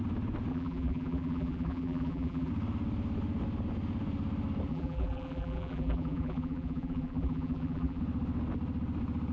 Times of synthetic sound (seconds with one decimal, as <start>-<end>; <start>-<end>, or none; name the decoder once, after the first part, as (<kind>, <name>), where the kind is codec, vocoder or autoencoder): 0.5-2.5 (vocoder, BigVGAN v2); 4.7-8.0